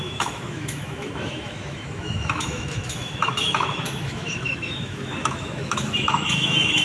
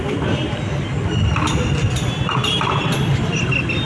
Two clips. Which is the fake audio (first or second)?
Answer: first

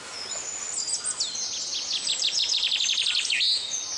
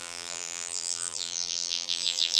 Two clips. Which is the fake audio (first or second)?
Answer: second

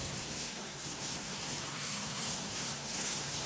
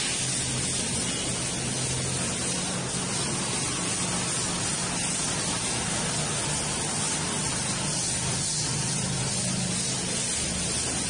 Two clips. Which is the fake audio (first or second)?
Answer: first